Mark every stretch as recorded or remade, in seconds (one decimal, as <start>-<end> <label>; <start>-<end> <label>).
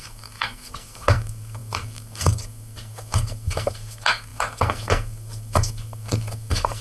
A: 0.0-6.8 remade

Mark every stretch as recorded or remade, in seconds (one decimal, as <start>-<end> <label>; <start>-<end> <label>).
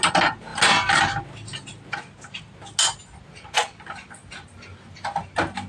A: 0.0-5.7 recorded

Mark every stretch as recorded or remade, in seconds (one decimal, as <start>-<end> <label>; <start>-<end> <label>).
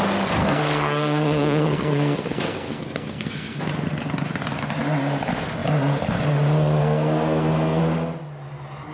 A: 0.0-0.4 recorded; 0.4-3.6 remade; 3.6-6.8 recorded; 6.8-7.8 remade; 7.8-8.9 recorded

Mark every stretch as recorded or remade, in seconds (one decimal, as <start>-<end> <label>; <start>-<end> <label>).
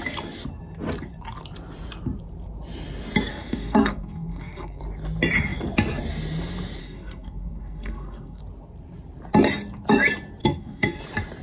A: 0.0-3.3 recorded; 3.3-4.8 remade; 4.8-6.8 recorded; 6.8-8.4 remade; 8.4-10.4 recorded; 10.4-11.0 remade; 11.0-11.4 recorded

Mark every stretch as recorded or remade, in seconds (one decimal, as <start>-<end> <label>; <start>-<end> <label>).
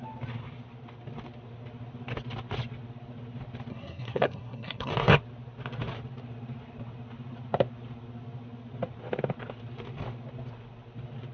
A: 0.0-3.7 recorded; 3.7-4.9 remade; 4.9-11.3 recorded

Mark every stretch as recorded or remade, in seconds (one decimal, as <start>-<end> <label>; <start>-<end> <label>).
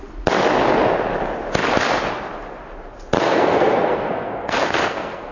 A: 0.0-3.2 recorded; 3.2-5.3 remade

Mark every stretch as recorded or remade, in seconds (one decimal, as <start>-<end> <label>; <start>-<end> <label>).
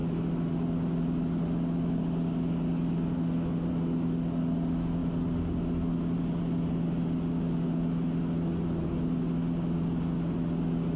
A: 0.0-11.0 recorded